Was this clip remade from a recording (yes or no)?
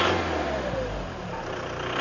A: no